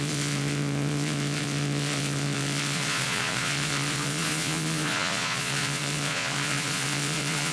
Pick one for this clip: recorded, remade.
remade